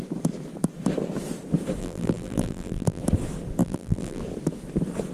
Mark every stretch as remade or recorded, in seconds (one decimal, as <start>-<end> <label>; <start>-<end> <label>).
0.0-1.8 recorded; 1.8-3.0 remade; 3.0-3.6 recorded; 3.6-4.2 remade; 4.2-5.1 recorded